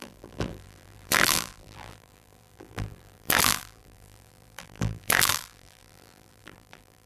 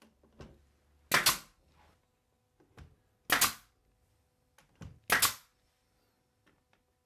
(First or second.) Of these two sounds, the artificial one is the first